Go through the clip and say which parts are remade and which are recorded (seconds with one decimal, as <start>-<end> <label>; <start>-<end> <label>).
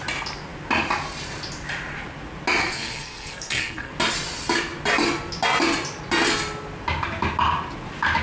0.0-2.6 recorded; 2.6-3.9 remade; 3.9-8.2 recorded